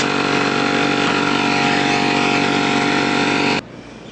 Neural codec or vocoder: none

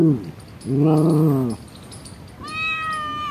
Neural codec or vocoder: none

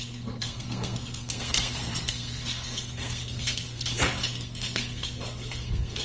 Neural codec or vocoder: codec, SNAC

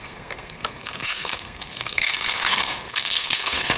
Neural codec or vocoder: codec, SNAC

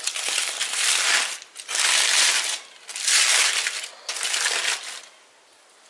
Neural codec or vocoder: none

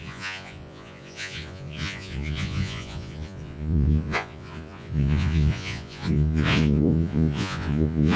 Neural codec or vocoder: vocoder, Vocos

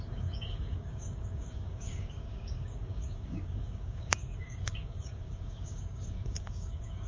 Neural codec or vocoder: codec, DAC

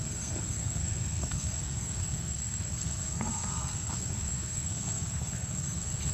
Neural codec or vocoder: codec, SNAC